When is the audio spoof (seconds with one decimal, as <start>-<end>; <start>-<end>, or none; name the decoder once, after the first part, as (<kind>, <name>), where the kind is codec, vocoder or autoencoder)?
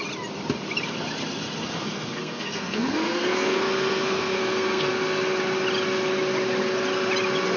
1.7-4.9 (codec, SNAC)